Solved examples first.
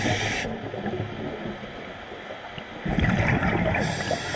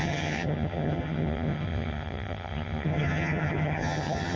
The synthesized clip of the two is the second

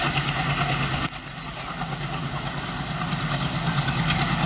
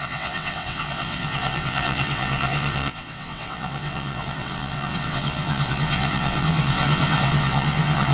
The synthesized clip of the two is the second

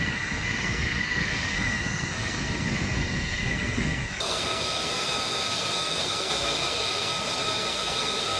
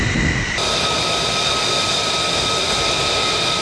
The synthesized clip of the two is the first